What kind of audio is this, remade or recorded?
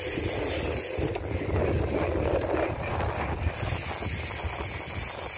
recorded